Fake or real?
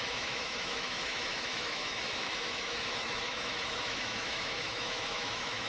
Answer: fake